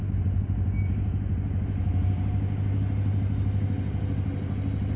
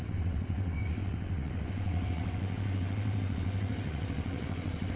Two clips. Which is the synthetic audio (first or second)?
second